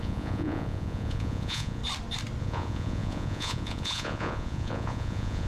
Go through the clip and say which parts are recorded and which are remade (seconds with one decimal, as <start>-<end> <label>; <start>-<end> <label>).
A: 0.0-1.8 remade; 1.8-2.4 recorded; 2.4-5.5 remade